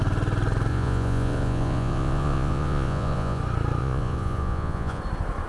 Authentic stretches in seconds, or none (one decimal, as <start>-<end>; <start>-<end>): 0.0-0.7; 3.4-3.8; 5.0-5.5